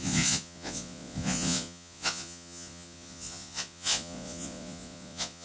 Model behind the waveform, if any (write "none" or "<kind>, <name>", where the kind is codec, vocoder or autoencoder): vocoder, Vocos